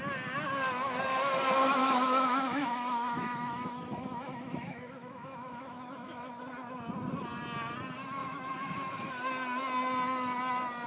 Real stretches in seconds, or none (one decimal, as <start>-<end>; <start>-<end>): 0.0-1.8; 6.3-8.2; 9.3-10.9